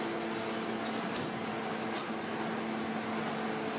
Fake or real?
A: real